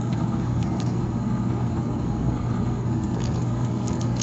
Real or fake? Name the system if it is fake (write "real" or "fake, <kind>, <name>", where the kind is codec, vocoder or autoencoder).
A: fake, codec, SNAC